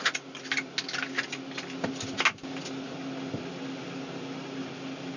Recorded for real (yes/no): yes